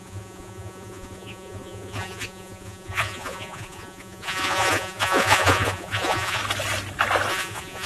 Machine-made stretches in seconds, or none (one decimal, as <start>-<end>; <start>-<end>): 0.0-6.4; 7.3-7.9